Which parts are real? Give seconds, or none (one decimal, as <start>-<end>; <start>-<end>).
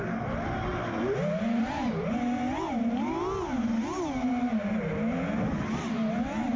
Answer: 0.0-6.6